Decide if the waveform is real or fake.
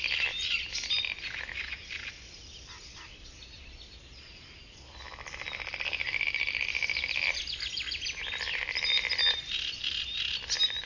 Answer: real